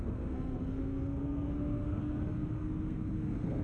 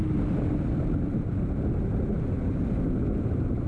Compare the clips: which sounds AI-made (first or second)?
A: first